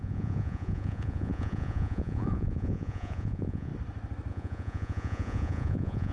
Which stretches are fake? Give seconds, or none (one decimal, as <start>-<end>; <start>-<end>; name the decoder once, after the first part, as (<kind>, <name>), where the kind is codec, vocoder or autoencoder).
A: 0.0-3.7 (vocoder, Vocos); 4.3-6.1